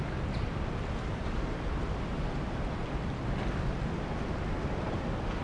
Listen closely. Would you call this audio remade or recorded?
recorded